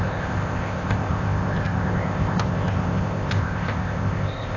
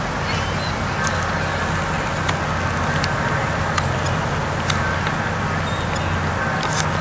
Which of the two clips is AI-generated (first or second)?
first